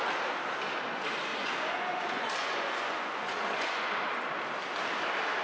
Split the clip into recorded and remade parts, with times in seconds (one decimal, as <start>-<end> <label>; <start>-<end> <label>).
0.0-1.3 recorded; 1.3-3.9 remade; 3.9-5.4 recorded